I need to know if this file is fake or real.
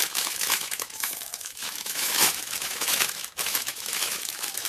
fake